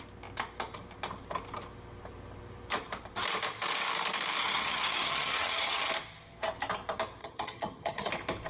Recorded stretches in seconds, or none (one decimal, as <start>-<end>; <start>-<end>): 0.0-4.4; 5.9-7.2; 8.1-8.5